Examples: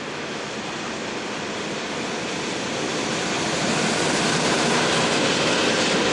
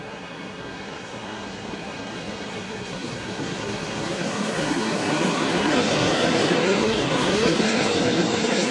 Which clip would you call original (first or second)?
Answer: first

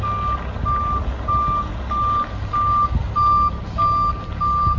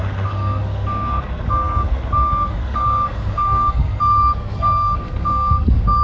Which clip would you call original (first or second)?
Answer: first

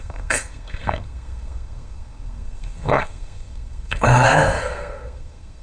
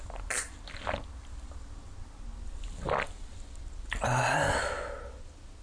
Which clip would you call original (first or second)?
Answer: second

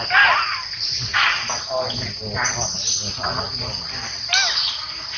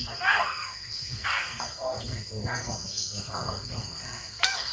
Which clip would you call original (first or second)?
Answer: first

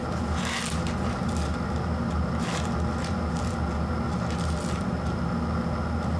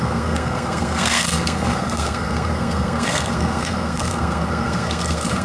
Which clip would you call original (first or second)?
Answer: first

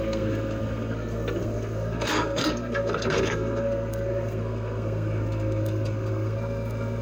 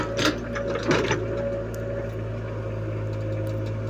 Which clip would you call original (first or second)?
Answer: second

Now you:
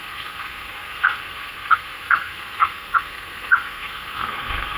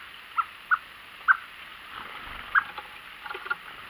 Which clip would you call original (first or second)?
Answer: second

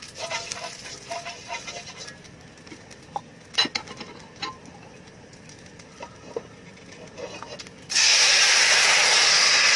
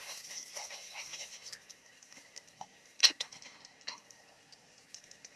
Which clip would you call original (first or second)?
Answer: first